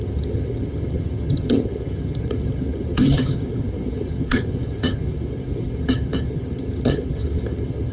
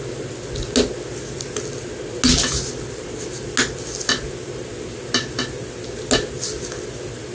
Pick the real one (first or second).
second